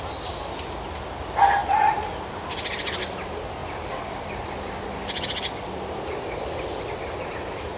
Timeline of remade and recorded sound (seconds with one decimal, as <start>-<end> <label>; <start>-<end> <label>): 0.0-7.8 recorded